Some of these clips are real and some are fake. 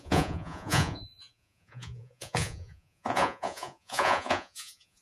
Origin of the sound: fake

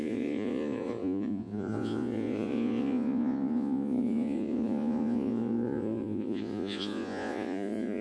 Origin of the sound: fake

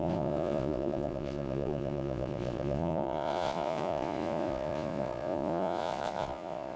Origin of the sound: fake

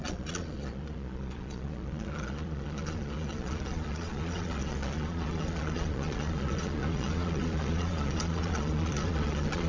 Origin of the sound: fake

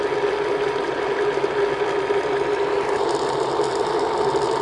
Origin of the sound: real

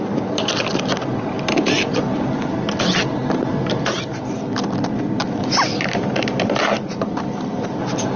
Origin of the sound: real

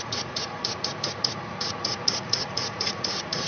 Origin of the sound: fake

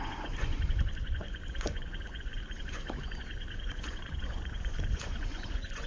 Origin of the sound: fake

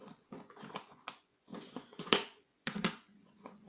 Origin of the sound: fake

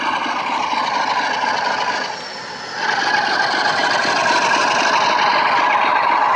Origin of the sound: real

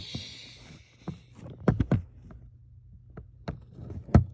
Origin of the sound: real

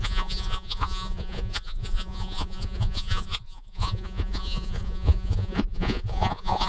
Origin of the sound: fake